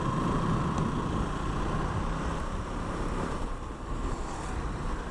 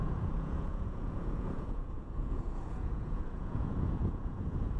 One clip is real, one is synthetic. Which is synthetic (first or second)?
second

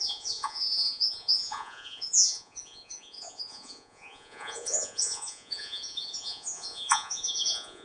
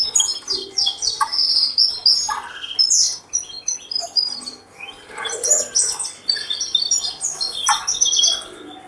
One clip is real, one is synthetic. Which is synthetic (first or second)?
first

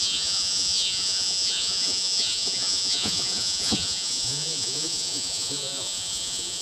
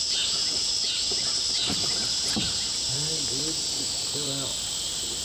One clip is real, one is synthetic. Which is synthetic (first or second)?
first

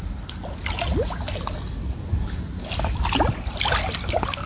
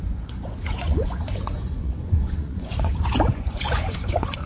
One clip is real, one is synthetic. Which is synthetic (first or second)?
second